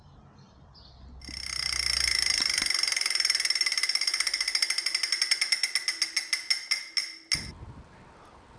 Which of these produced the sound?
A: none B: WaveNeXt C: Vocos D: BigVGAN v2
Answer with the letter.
A